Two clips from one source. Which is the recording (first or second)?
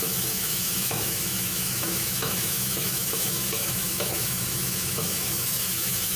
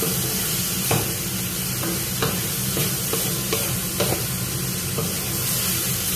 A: second